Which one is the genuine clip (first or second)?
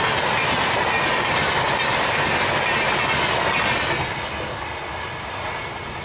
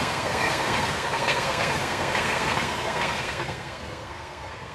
first